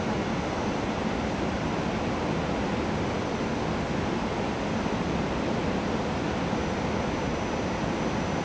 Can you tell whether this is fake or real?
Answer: real